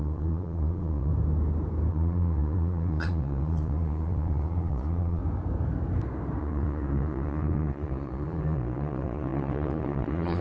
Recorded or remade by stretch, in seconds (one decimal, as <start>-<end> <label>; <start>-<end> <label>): 0.0-1.1 remade; 1.1-1.9 recorded; 1.9-5.2 remade; 5.2-6.4 recorded; 6.4-10.4 remade